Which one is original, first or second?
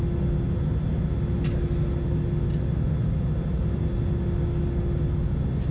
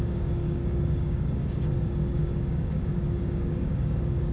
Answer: first